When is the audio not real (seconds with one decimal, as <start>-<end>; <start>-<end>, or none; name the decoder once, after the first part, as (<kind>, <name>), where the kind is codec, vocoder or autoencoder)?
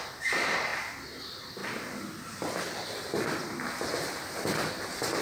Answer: none